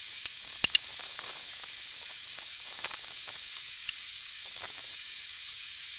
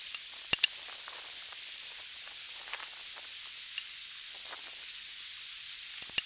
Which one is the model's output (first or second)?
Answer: first